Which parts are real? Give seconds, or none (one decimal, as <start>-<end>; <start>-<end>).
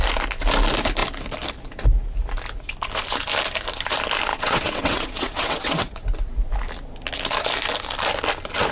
0.0-4.3; 6.0-8.7